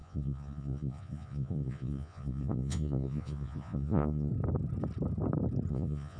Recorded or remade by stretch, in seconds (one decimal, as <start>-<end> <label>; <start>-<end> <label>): 0.0-4.3 remade; 4.3-5.7 recorded; 5.7-6.2 remade